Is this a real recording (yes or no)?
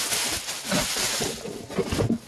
yes